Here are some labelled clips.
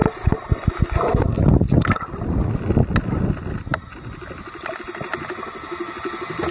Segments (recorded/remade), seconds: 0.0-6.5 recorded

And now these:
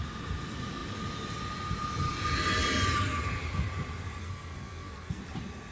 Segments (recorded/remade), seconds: 0.0-4.2 recorded; 4.2-5.2 remade; 5.2-5.7 recorded

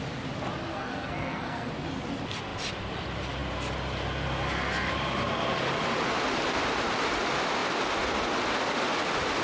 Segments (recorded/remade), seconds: 0.0-0.7 recorded; 0.7-1.7 remade; 1.7-9.4 recorded

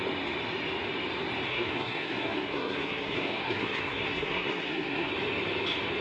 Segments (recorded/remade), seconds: 0.0-1.5 recorded; 1.5-5.1 remade; 5.1-6.0 recorded

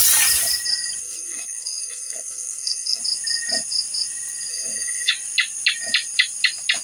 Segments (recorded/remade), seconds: 0.0-1.0 recorded; 1.0-3.0 remade; 3.0-4.5 recorded; 4.5-5.1 remade; 5.1-6.8 recorded

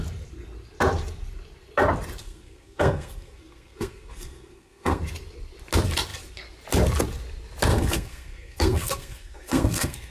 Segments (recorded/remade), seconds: 0.0-2.2 recorded; 2.2-5.0 remade; 5.0-7.7 recorded; 7.7-10.1 remade

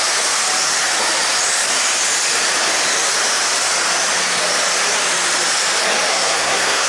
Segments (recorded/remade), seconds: 0.0-6.1 recorded; 6.1-6.9 remade